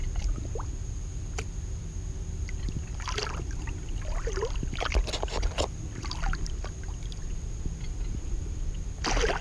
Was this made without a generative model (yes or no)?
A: yes